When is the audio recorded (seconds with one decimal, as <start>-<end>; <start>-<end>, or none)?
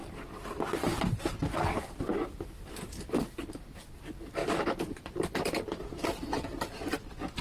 0.0-4.4; 5.8-7.4